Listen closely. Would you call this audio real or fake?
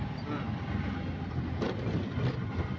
real